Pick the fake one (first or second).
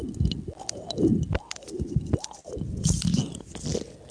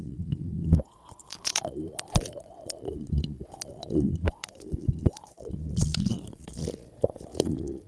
second